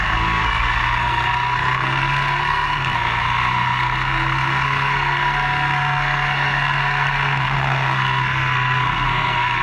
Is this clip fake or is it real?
fake